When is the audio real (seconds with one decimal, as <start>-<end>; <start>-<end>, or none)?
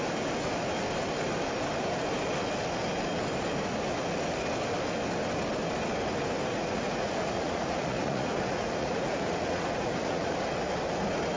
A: 0.0-6.5; 10.3-11.4